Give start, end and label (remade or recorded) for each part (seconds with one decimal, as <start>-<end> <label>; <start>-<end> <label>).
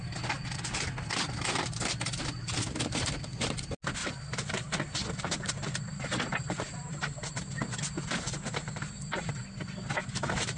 0.0-4.0 recorded; 4.0-6.9 remade; 6.9-8.6 recorded; 8.6-9.3 remade; 9.3-10.6 recorded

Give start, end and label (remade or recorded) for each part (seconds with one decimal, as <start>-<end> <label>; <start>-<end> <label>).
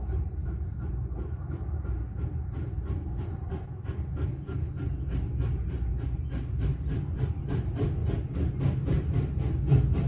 0.0-0.4 recorded; 0.4-0.9 remade; 0.9-10.1 recorded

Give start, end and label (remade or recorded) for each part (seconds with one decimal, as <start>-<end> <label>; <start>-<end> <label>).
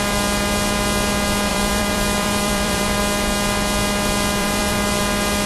0.0-1.5 recorded; 1.5-3.0 remade; 3.0-4.4 recorded; 4.4-5.0 remade; 5.0-5.5 recorded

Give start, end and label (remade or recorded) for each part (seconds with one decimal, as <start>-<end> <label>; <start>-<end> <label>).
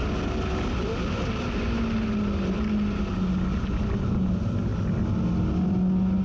0.0-6.2 recorded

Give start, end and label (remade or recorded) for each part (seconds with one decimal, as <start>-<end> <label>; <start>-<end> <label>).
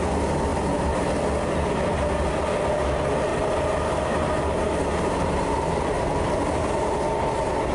0.0-3.3 recorded; 3.3-6.2 remade; 6.2-7.7 recorded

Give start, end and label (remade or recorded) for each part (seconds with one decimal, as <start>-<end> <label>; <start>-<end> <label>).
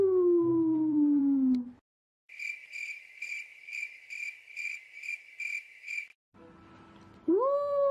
0.0-0.5 recorded; 0.5-1.2 remade; 1.2-3.5 recorded; 3.5-4.1 remade; 4.1-4.5 recorded; 4.5-5.3 remade; 5.3-7.9 recorded